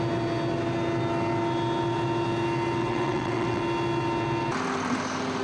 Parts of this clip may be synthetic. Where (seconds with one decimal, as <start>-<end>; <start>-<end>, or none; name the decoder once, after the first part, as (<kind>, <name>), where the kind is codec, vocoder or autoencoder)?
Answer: 2.8-3.6 (vocoder, WaveNeXt)